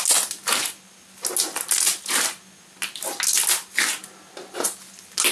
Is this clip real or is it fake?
real